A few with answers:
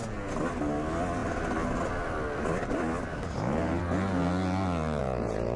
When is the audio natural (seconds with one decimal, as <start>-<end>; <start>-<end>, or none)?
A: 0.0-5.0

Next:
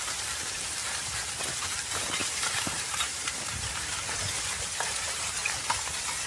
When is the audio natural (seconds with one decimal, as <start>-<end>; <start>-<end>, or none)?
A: 0.8-1.4; 5.4-6.3

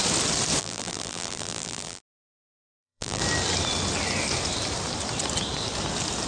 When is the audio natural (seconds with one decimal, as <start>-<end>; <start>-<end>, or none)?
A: 0.0-0.6; 2.0-2.4; 3.2-6.3